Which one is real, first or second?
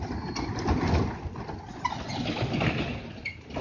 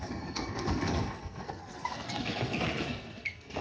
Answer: first